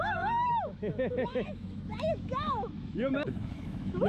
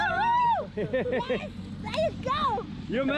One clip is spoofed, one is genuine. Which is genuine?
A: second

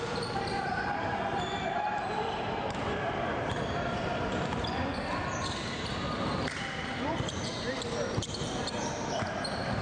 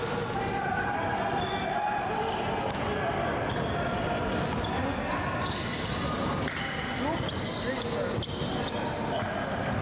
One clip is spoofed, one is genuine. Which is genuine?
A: second